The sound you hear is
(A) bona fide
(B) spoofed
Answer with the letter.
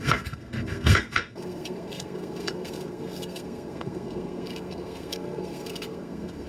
B